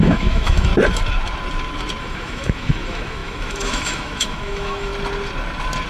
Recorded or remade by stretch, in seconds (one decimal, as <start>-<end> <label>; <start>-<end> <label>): 0.0-0.7 remade; 0.7-2.0 recorded; 2.0-4.9 remade; 4.9-5.9 recorded